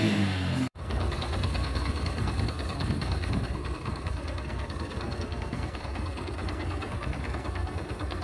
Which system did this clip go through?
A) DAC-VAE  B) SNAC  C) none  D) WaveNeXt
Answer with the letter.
B